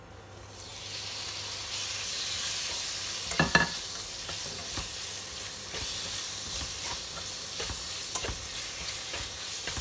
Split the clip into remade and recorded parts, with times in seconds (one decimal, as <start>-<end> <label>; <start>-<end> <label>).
0.0-9.8 recorded